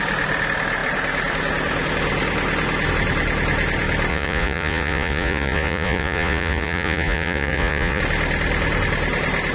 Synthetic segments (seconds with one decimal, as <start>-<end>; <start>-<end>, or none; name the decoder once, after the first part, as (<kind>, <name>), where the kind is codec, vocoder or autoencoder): 4.1-8.0 (vocoder, Vocos)

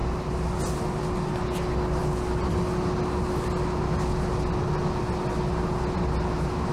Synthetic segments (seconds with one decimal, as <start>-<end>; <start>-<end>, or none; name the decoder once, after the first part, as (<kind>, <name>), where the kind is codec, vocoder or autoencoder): none

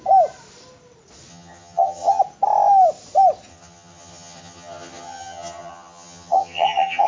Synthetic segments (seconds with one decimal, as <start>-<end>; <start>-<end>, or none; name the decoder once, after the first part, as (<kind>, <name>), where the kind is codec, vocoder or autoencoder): 1.3-2.2 (vocoder, HiFi-GAN); 3.5-7.1

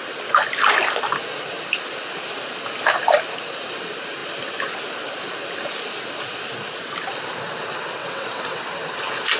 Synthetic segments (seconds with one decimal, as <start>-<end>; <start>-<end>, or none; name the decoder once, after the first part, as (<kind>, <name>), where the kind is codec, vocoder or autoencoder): 8.0-8.6 (vocoder, WaveNeXt)